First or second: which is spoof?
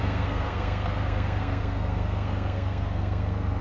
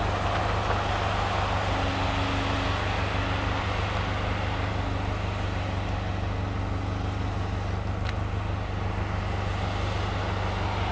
first